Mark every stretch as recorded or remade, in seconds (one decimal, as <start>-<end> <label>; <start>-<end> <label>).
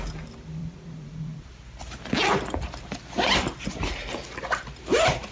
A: 0.0-0.6 recorded; 0.6-1.5 remade; 1.5-5.3 recorded